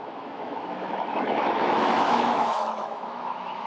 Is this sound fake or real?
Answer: fake